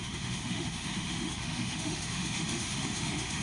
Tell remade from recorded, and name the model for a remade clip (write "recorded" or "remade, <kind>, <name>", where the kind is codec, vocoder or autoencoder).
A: remade, autoencoder, DAC-VAE